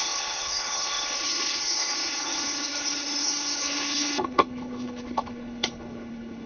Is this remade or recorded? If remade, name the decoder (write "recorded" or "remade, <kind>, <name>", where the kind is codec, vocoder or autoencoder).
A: remade, codec, HILCodec